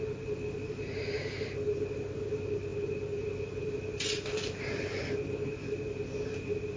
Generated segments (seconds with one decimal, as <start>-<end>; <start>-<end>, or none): none